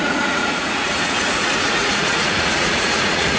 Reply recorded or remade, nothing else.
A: remade